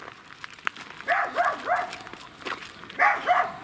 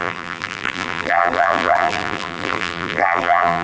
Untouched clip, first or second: first